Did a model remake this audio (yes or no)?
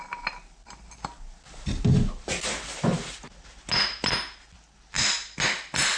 no